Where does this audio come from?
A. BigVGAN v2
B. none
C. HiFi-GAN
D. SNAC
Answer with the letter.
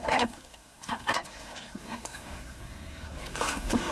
D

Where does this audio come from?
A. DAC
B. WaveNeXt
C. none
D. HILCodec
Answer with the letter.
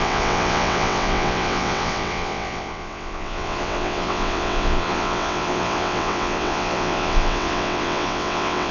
B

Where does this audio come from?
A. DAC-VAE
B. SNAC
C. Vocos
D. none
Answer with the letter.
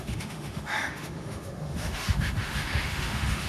A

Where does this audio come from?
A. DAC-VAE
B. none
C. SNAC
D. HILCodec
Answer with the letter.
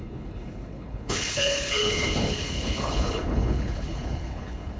D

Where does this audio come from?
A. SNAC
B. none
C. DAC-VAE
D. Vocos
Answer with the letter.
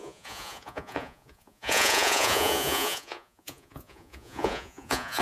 D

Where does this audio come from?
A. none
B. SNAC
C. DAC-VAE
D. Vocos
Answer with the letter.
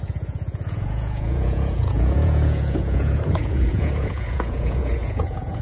D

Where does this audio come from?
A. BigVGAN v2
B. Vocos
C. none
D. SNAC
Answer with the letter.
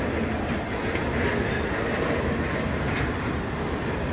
C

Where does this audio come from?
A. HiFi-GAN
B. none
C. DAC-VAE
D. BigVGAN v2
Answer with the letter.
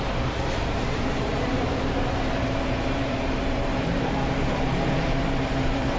D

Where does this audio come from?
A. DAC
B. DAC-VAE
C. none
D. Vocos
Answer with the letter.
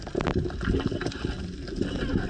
C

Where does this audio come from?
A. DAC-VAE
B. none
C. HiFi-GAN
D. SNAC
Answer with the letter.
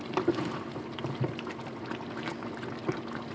B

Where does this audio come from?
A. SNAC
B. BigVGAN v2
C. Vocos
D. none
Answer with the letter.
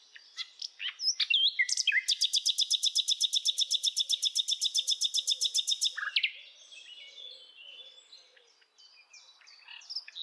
D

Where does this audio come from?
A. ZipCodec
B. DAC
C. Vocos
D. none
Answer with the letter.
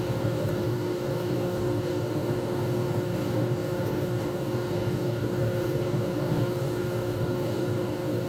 B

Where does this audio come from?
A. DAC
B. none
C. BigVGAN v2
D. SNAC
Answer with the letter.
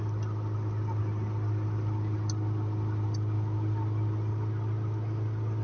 B